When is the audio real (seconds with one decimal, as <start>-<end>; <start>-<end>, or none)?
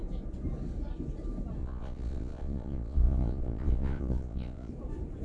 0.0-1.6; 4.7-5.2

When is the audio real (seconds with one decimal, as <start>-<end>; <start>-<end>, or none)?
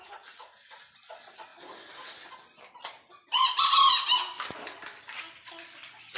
0.0-6.2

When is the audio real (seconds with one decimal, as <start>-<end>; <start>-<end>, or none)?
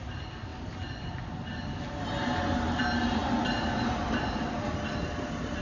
0.0-5.6